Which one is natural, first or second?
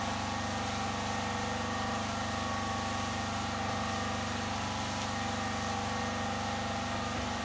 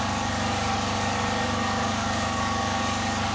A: first